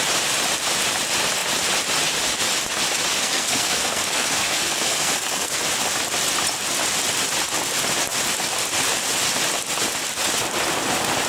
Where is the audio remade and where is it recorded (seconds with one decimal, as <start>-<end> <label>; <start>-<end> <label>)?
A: 0.0-3.1 recorded; 3.1-5.6 remade; 5.6-11.3 recorded